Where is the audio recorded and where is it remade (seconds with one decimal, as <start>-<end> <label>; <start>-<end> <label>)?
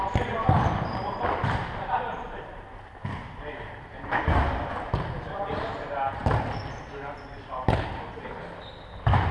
0.0-4.7 remade; 4.7-9.3 recorded